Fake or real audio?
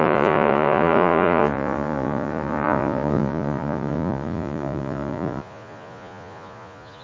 fake